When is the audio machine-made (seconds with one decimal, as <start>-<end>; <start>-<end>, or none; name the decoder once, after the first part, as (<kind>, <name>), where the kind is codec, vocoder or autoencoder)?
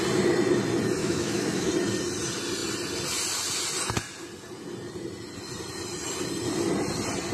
1.0-1.7 (autoencoder, DAC-VAE)